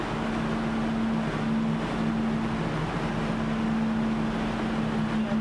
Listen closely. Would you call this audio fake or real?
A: real